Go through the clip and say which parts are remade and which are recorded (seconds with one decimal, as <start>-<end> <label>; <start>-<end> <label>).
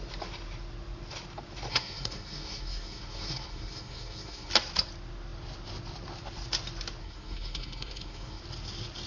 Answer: 0.0-1.7 recorded; 1.7-4.5 remade; 4.5-7.0 recorded; 7.0-8.4 remade; 8.4-9.1 recorded